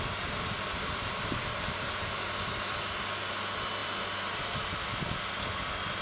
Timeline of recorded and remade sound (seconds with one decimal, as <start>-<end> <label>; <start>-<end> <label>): 0.0-6.0 recorded

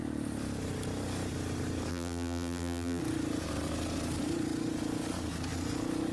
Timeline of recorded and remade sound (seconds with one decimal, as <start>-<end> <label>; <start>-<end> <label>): 0.0-1.9 recorded; 1.9-3.0 remade; 3.0-6.1 recorded